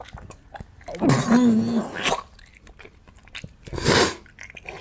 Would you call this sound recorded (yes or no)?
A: yes